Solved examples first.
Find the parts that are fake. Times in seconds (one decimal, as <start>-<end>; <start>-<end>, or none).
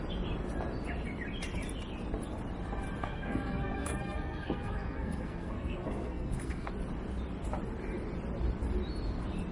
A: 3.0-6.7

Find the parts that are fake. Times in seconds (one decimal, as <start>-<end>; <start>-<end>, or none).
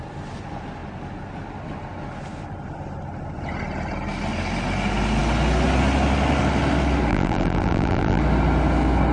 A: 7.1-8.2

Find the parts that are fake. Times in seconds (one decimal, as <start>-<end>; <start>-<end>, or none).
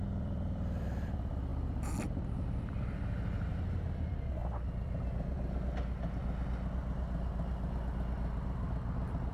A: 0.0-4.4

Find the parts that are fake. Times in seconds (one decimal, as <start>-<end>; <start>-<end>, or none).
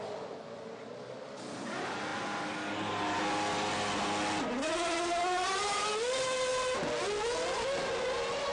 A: none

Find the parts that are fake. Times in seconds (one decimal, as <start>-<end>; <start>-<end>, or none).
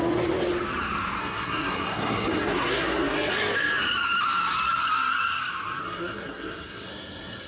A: 1.2-3.3; 5.8-7.5